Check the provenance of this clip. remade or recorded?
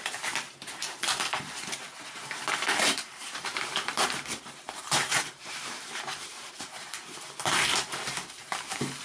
remade